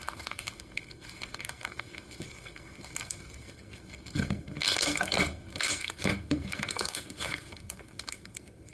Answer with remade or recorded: remade